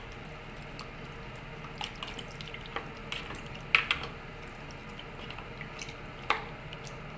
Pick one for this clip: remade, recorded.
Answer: recorded